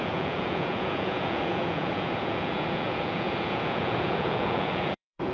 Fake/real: fake